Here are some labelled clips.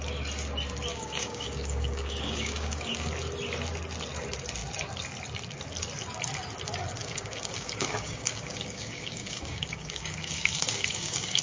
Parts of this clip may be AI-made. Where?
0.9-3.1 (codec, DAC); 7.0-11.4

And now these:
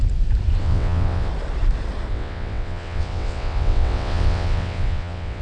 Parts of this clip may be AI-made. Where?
0.6-1.3 (vocoder, WaveNeXt); 2.1-5.4

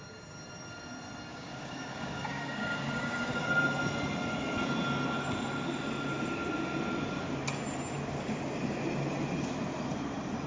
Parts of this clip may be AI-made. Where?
1.3-3.5 (codec, DAC)

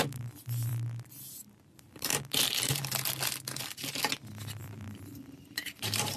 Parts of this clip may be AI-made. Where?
0.0-0.7 (vocoder, BigVGAN v2); 1.7-2.1; 4.6-6.2

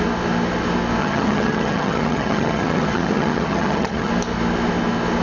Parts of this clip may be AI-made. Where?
1.0-4.1 (vocoder, HiFi-GAN)

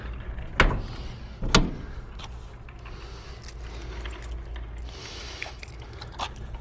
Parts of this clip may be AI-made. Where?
5.0-5.6 (autoencoder, DAC-VAE)

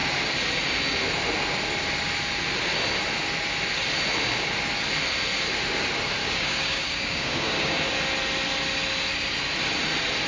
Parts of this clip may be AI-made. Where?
6.2-7.8 (codec, DAC)